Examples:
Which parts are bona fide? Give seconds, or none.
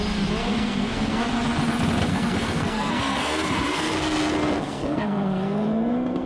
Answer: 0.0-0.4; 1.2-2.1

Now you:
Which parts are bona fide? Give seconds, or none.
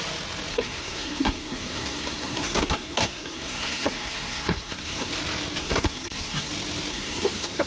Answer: 0.0-0.5; 5.1-5.6; 6.5-6.9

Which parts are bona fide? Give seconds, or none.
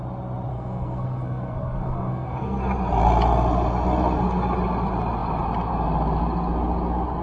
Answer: 0.0-0.5; 2.6-7.2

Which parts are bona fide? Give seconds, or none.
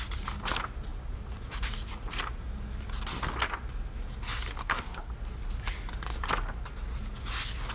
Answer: 0.0-4.6; 5.1-7.7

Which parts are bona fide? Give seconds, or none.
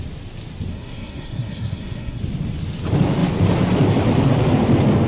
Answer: 0.0-0.7; 2.2-5.1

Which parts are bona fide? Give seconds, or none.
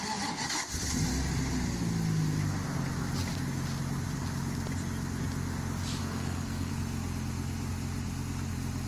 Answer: 0.0-6.0; 6.7-8.9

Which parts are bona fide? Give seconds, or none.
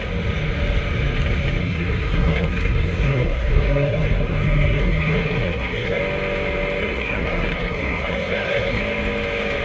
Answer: 0.0-1.6; 6.0-6.8; 8.8-9.6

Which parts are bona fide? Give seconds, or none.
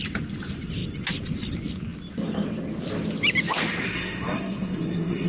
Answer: 0.0-3.8